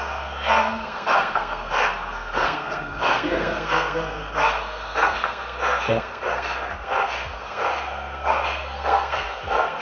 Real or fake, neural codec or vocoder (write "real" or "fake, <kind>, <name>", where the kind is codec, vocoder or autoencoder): fake, codec, SNAC